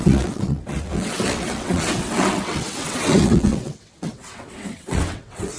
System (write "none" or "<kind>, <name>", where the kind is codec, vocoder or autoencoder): vocoder, WaveNeXt